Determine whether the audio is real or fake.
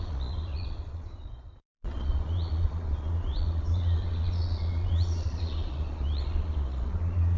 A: fake